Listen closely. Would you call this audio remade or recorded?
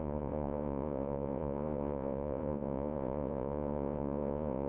remade